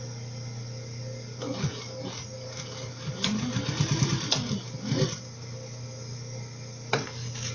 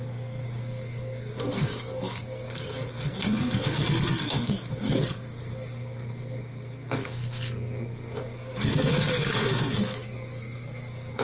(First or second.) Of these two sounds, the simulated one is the second